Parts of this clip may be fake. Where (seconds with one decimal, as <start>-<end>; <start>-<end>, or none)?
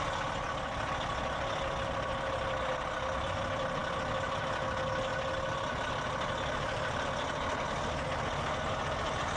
none